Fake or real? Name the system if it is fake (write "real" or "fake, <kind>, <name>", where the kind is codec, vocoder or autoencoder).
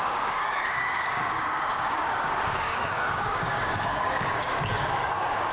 fake, codec, DAC